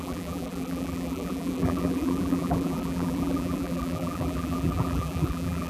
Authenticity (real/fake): fake